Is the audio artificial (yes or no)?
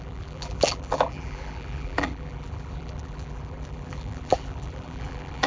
yes